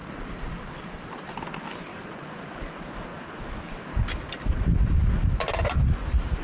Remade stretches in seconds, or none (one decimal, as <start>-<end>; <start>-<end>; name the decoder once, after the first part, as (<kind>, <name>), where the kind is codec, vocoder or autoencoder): 1.9-2.6 (vocoder, Vocos)